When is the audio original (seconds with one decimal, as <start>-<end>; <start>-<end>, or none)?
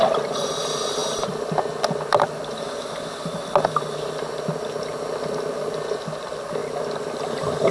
0.0-7.7